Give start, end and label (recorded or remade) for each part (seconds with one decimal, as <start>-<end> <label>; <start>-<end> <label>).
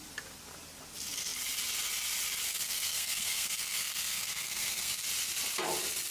0.0-2.5 recorded; 2.5-5.0 remade; 5.0-6.1 recorded